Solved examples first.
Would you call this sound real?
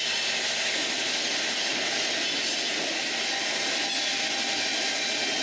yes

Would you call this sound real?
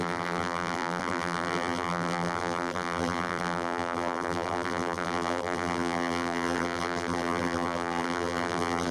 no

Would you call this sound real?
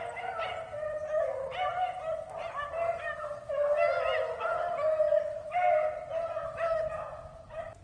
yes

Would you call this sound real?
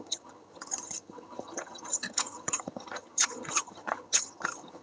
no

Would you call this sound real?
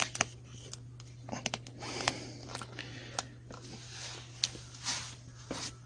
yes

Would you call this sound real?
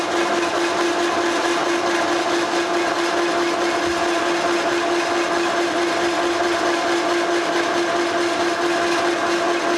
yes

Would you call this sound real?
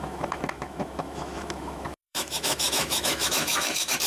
no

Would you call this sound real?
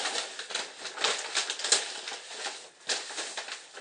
yes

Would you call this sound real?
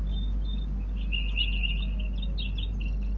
yes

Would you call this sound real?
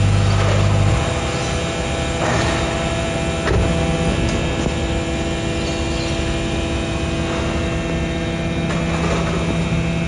yes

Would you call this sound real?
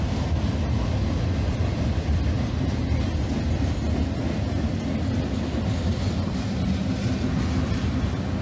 yes